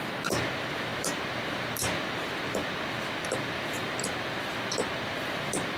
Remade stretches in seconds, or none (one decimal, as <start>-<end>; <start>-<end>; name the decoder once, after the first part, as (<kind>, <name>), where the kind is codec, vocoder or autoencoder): 0.0-5.8 (vocoder, BigVGAN v2)